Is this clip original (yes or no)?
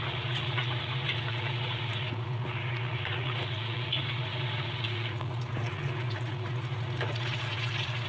no